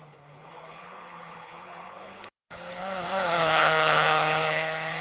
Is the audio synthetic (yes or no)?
yes